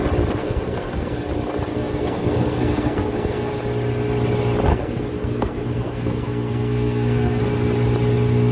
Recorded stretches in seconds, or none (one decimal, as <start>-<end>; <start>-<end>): 0.0-0.4; 1.2-1.7; 3.5-4.7; 7.4-8.5